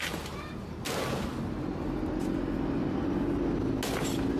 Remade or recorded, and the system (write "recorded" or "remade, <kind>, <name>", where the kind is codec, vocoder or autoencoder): recorded